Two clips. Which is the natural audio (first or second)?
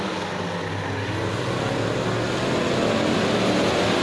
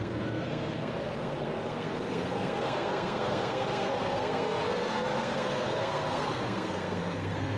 first